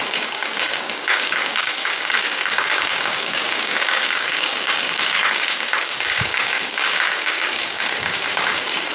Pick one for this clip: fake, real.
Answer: fake